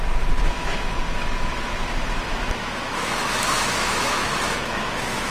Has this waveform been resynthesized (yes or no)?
yes